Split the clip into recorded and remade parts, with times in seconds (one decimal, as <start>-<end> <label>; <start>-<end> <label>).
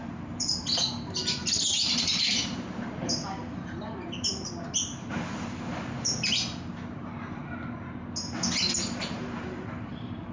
0.0-7.4 remade; 7.4-8.8 recorded; 8.8-10.3 remade